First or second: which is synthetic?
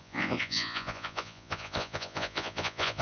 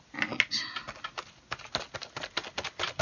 first